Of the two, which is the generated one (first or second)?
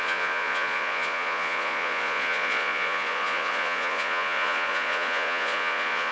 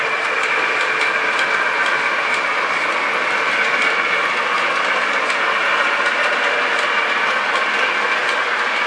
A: first